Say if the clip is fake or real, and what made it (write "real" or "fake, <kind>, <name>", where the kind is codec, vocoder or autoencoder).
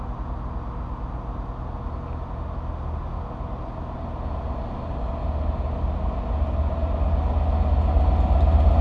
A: real